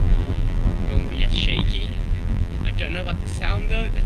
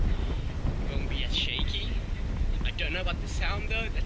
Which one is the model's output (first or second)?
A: first